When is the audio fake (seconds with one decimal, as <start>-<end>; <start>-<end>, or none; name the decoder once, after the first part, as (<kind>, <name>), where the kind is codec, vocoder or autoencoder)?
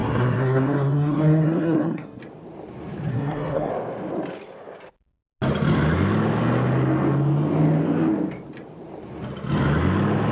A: 0.0-2.2 (codec, SNAC); 3.1-3.7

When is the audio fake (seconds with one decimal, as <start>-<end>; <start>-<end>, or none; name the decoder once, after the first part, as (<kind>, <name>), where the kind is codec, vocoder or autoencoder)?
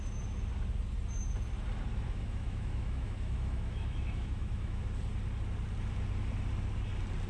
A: 1.9-4.8 (autoencoder, DAC-VAE)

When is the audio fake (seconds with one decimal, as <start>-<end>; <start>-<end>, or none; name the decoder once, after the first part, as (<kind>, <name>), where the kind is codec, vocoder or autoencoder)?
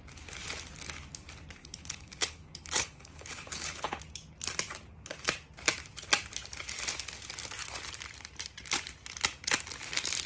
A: 1.6-4.0 (codec, HILCodec)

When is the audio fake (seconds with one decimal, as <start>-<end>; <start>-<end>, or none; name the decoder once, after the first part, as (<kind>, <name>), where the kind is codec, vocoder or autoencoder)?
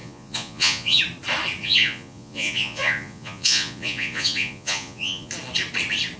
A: 0.0-1.0 (vocoder, Vocos); 1.6-5.3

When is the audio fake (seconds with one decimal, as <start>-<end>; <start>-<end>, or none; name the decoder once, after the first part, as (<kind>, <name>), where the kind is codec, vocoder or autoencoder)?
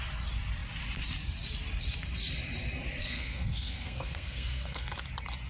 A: 3.0-4.9 (codec, SNAC)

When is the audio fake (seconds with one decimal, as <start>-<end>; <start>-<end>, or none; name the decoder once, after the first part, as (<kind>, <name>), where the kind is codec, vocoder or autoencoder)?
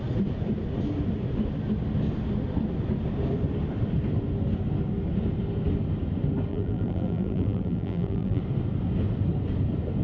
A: 6.5-8.4 (vocoder, BigVGAN v2)